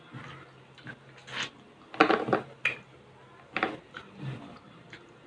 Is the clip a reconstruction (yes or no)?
no